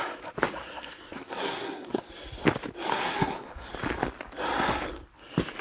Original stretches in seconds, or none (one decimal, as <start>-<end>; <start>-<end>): 0.0-0.6; 2.0-2.9; 3.7-5.6